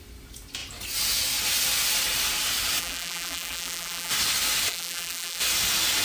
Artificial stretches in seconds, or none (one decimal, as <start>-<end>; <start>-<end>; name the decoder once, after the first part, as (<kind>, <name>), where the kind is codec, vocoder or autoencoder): 2.8-4.1 (vocoder, BigVGAN v2); 4.7-5.4